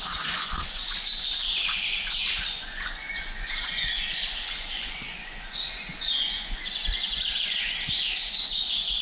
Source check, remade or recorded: remade